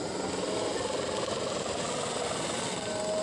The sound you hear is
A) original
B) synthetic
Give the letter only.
A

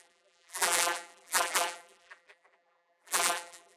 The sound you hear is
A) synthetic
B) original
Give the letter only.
A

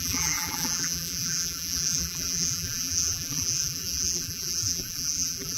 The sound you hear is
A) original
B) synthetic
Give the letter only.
B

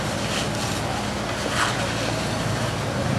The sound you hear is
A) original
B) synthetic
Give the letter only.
A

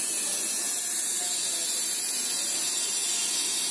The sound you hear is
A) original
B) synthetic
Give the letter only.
B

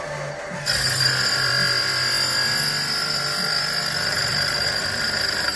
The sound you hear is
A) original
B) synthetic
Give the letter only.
B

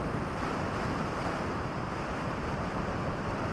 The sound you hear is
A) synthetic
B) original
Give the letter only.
A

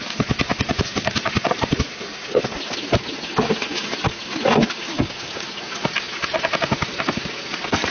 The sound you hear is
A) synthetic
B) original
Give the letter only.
B